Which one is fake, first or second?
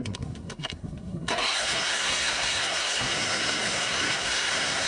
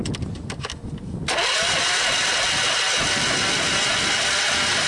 first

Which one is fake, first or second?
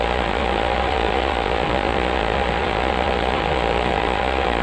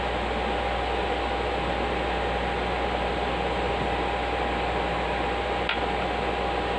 first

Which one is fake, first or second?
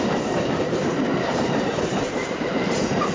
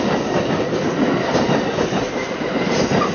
first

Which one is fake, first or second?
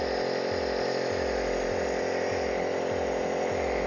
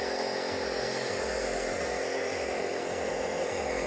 second